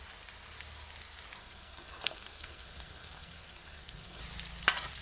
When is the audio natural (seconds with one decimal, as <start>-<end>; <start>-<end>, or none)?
0.0-1.4; 4.2-5.0